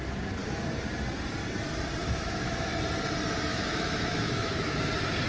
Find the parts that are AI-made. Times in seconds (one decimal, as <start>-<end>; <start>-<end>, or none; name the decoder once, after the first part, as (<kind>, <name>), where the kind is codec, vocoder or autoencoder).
2.0-2.8 (autoencoder, DAC-VAE); 3.5-4.8